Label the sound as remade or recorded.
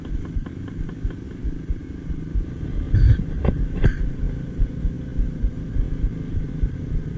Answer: recorded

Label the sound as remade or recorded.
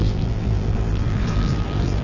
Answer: remade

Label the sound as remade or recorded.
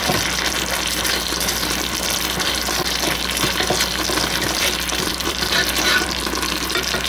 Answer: remade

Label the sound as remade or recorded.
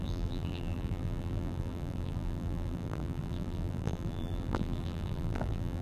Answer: remade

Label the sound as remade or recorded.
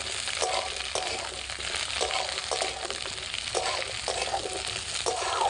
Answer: recorded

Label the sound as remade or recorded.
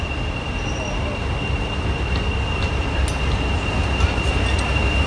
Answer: recorded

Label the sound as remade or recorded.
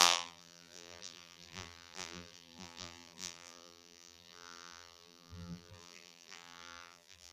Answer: remade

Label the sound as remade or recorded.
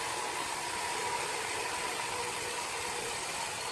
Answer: recorded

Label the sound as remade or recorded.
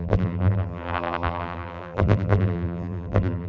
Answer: remade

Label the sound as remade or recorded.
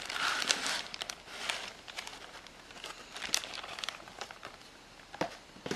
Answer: remade